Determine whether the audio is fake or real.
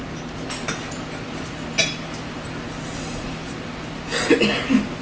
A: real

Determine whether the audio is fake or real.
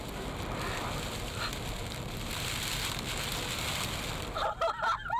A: real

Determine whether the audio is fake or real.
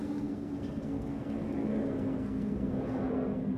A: fake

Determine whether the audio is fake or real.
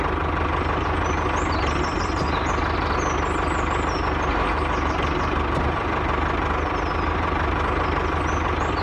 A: real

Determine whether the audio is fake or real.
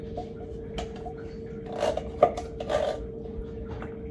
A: real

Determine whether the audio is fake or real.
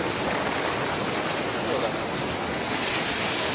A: real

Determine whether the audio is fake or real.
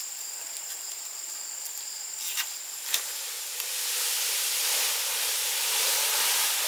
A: real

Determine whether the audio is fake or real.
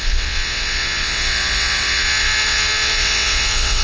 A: fake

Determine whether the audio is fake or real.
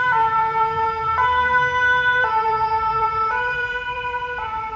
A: fake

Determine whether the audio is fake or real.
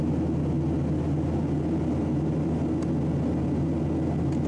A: real